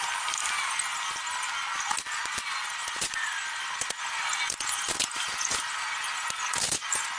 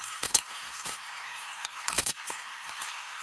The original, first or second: first